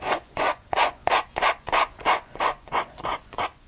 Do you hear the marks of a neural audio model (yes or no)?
yes